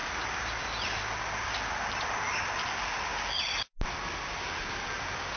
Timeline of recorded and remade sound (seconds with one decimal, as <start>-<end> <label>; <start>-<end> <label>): 0.0-5.4 recorded